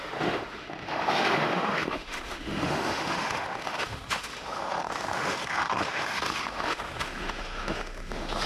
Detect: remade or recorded remade